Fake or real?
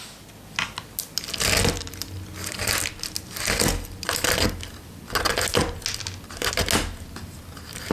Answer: real